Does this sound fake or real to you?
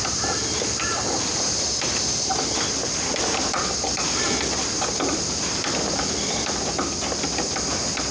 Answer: real